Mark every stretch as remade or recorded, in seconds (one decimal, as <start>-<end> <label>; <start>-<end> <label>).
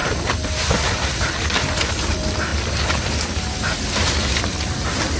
0.0-5.2 recorded